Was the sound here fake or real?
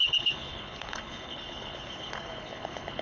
fake